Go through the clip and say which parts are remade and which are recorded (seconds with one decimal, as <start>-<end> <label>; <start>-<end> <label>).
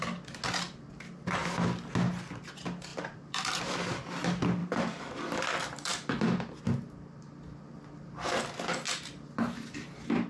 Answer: 0.0-2.9 recorded; 2.9-3.6 remade; 3.6-4.6 recorded; 4.6-6.6 remade; 6.6-10.3 recorded